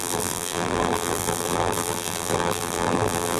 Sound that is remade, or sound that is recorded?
remade